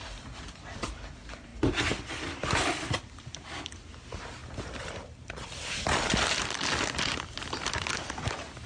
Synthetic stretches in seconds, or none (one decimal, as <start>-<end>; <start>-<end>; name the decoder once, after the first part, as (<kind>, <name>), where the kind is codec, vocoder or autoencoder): none